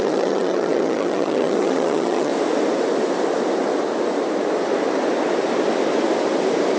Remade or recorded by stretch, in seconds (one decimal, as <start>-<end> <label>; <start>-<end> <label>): 0.0-2.3 remade; 2.3-6.8 recorded